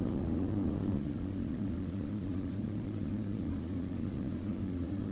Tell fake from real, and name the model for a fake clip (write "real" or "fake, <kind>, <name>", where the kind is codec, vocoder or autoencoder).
fake, vocoder, Vocos